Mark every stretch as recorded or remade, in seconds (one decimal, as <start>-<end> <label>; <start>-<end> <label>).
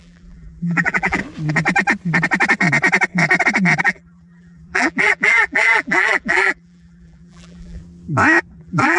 0.0-1.2 remade; 1.2-3.8 recorded; 3.8-7.8 remade; 7.8-8.5 recorded; 8.5-9.0 remade